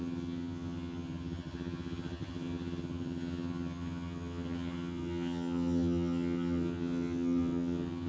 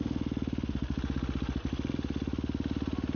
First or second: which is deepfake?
first